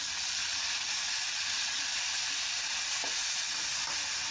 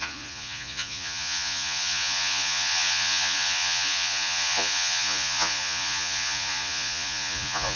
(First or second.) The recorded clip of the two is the first